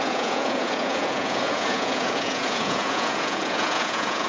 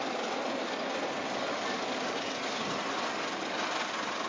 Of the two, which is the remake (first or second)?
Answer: first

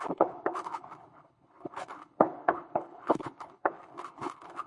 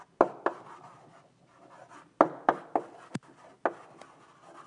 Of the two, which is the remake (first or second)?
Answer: first